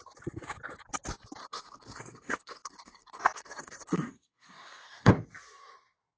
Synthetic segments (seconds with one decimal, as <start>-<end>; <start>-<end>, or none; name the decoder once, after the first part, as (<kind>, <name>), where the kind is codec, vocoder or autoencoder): 1.4-5.1 (codec, SNAC)

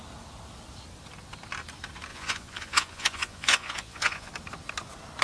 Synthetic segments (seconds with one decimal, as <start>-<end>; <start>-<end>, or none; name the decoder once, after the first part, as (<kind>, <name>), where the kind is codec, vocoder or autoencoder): 2.1-4.3 (vocoder, Vocos)

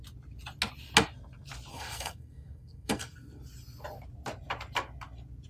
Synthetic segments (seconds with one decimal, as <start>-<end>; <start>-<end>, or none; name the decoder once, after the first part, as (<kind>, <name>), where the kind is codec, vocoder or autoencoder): 1.7-3.4 (codec, SNAC)

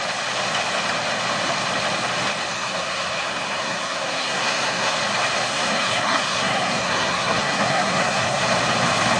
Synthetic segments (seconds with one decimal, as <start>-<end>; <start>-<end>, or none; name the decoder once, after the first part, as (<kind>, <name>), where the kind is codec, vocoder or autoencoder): 2.5-5.0 (codec, SNAC); 5.5-8.4

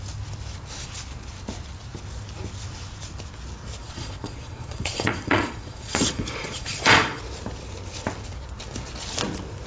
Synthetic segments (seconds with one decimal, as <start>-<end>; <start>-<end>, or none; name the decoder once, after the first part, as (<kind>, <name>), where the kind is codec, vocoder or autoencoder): 3.8-7.2 (vocoder, Vocos)

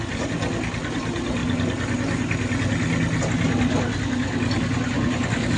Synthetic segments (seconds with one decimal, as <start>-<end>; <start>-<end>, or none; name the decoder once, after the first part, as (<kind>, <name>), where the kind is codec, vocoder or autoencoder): none

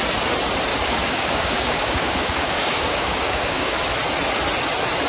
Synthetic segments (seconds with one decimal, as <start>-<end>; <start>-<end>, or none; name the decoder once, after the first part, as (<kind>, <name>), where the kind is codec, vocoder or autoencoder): 0.7-3.8 (codec, DAC)